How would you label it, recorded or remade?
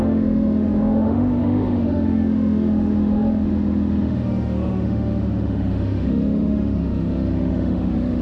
remade